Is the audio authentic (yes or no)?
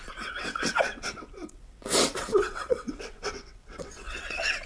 no